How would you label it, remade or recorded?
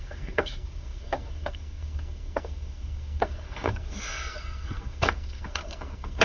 remade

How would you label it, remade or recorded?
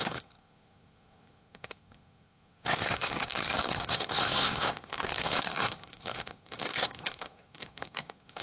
remade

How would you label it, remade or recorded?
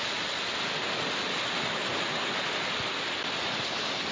recorded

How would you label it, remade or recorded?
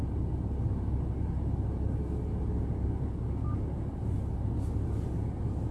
recorded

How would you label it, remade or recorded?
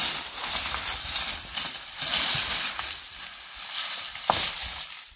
recorded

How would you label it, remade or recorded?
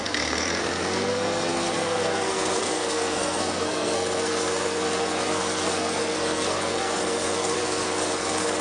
remade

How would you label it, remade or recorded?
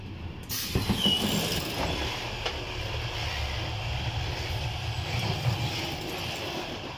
recorded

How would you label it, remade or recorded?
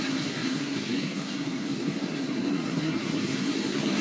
remade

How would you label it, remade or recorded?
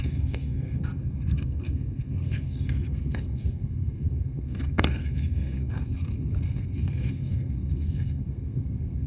remade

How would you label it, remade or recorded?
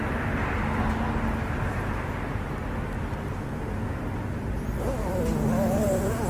recorded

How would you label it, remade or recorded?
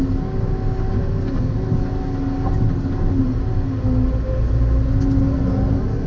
recorded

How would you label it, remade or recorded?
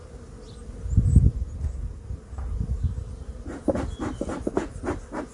recorded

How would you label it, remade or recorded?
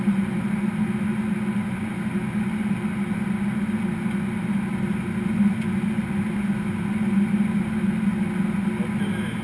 recorded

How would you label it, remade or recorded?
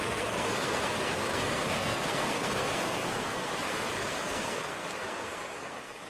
remade